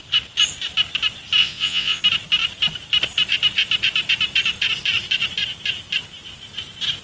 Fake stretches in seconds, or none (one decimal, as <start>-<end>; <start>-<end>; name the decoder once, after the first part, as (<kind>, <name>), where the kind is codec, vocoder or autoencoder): 1.4-2.0 (vocoder, Vocos)